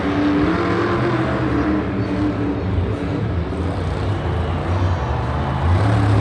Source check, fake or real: real